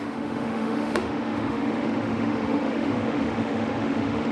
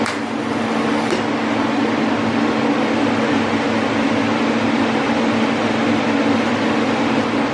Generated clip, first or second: first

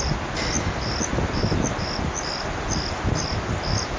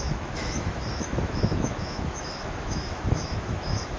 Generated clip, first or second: second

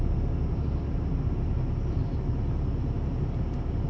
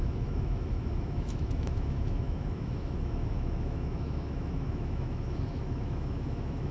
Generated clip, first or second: second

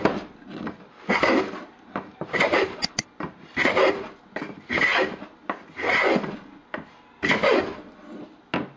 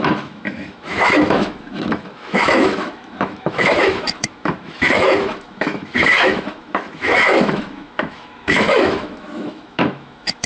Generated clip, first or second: second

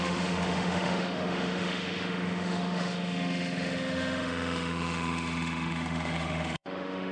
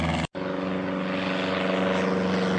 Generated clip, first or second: first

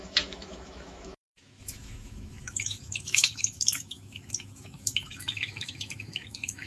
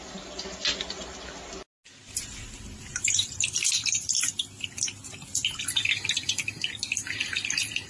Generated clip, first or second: first